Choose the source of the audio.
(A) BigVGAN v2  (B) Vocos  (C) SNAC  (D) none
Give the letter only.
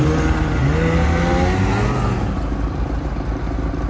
D